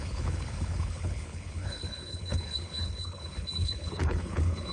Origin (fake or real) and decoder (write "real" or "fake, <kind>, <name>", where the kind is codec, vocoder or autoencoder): fake, codec, HILCodec